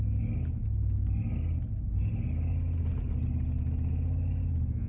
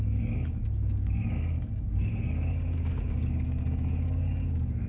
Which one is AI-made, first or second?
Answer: second